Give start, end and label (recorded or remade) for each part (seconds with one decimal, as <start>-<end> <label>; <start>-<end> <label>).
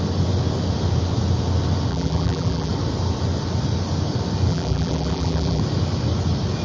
0.0-1.9 recorded; 1.9-2.7 remade; 2.7-4.5 recorded; 4.5-5.6 remade; 5.6-6.6 recorded